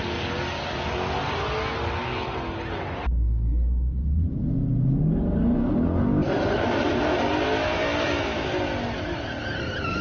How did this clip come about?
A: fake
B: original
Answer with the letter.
B